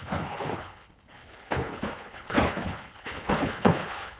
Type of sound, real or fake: fake